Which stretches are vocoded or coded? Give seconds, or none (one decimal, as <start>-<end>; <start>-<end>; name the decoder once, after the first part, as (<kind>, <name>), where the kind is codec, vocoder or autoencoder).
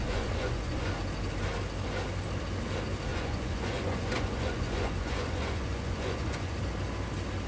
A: 0.0-0.9 (vocoder, Vocos); 3.1-6.6